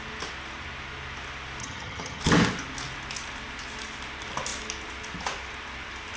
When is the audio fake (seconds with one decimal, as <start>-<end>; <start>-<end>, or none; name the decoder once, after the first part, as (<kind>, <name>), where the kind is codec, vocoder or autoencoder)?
1.6-2.2 (vocoder, HiFi-GAN)